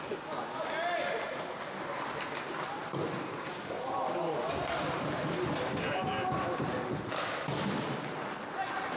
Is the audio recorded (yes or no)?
yes